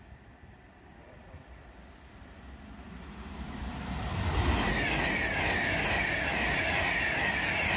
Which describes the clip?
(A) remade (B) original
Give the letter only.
B